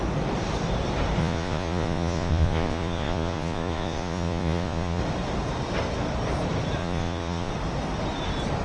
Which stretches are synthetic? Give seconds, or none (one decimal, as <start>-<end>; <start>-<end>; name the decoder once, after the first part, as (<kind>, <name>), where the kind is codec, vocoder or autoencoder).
1.2-5.0 (vocoder, Vocos); 6.8-7.5